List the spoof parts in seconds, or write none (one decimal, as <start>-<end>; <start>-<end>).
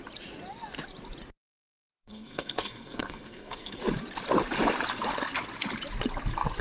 1.9-3.8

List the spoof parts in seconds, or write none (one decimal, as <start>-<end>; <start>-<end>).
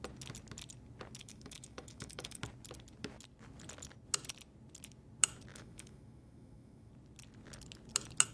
1.2-2.4; 5.5-6.9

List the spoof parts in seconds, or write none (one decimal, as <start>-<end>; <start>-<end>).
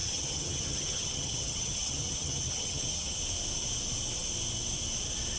0.0-3.2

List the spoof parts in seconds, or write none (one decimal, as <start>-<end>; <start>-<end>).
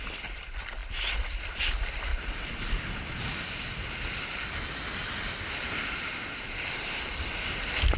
none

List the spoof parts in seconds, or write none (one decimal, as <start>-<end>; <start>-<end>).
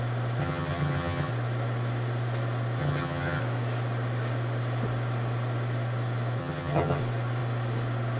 0.4-1.3; 2.8-3.4; 6.4-7.0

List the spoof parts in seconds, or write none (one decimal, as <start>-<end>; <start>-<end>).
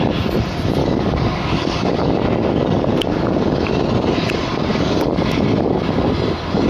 0.8-2.1; 4.7-5.4